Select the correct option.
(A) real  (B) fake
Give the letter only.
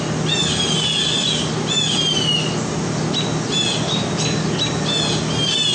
A